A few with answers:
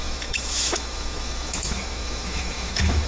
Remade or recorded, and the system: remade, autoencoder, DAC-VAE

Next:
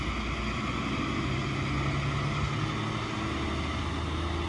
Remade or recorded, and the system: recorded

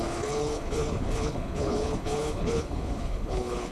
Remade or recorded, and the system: remade, codec, HILCodec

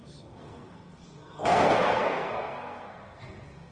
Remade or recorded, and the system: remade, codec, SNAC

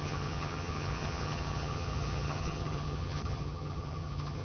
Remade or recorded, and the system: remade, vocoder, HiFi-GAN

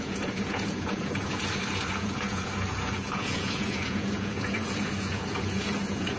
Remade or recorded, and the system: remade, vocoder, Vocos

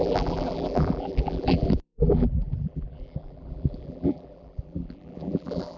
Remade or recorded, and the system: remade, vocoder, BigVGAN v2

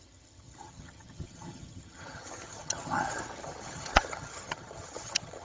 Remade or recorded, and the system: remade, vocoder, HiFi-GAN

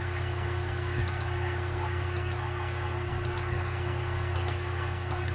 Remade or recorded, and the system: remade, codec, SNAC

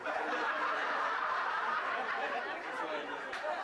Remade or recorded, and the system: remade, vocoder, BigVGAN v2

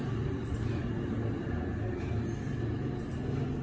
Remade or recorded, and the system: recorded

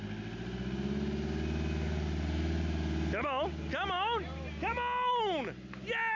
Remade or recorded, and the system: recorded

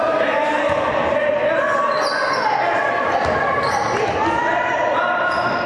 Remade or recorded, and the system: recorded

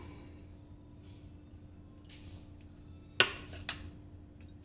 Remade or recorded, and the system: recorded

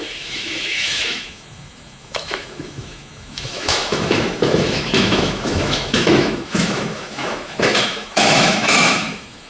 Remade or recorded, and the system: remade, autoencoder, DAC-VAE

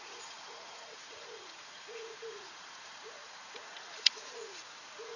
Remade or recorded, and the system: remade, vocoder, Vocos